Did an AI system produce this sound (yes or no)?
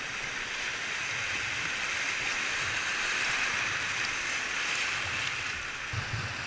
no